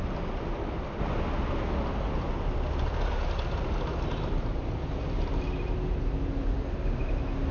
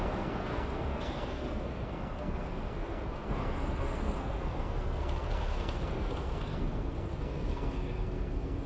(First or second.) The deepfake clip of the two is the second